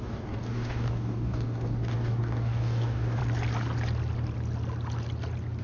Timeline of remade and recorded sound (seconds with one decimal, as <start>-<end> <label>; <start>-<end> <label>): 0.0-3.2 remade; 3.2-5.6 recorded